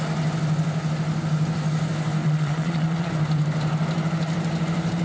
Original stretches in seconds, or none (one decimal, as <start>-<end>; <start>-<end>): 0.0-2.2; 3.1-5.0

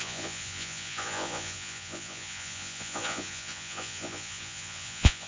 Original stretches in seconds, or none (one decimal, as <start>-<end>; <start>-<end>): none

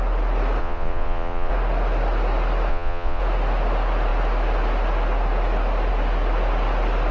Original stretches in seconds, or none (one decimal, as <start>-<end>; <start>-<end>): 0.0-0.6; 1.5-2.7; 3.2-7.1

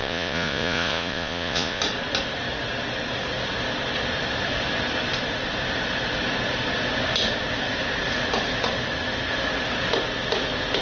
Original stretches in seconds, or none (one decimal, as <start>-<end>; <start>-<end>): 1.8-10.8

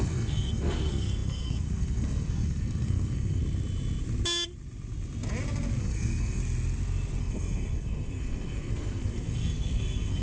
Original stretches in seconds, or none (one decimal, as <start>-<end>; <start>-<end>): 3.4-5.8; 6.4-7.2